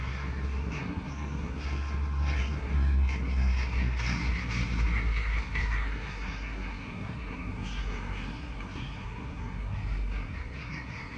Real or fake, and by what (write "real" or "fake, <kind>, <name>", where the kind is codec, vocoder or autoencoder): fake, codec, SNAC